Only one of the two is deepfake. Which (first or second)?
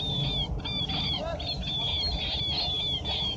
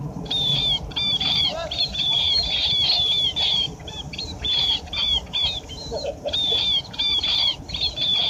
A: second